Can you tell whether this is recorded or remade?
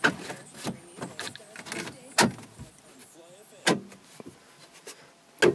recorded